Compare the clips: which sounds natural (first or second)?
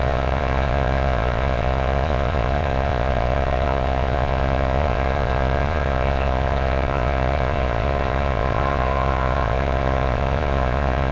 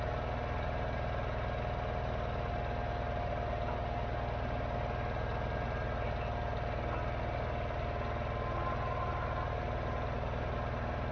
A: second